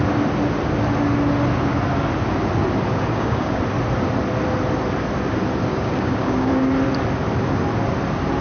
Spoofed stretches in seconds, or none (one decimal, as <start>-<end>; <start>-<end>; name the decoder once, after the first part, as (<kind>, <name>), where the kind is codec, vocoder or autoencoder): 2.9-3.6 (codec, DAC); 5.7-6.5